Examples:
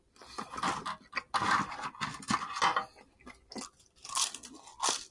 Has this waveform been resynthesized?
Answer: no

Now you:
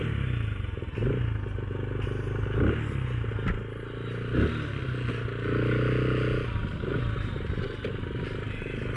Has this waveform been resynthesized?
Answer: no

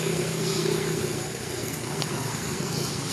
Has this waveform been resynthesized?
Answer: yes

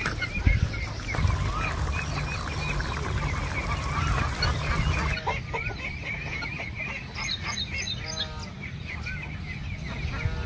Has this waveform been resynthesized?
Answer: no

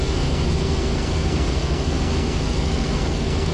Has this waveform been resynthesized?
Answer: yes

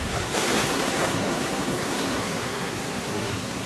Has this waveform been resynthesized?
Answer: yes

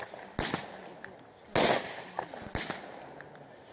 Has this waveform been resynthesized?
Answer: no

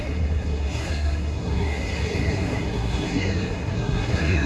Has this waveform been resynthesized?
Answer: yes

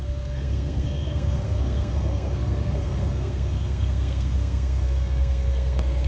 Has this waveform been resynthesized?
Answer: yes